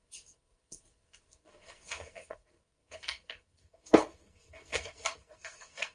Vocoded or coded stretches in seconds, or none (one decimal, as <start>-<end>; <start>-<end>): 0.0-5.9